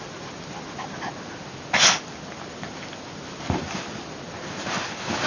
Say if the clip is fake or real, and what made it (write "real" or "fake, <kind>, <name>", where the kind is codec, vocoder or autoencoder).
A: real